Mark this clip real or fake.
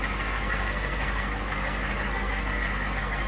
fake